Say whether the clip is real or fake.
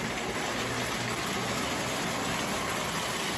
real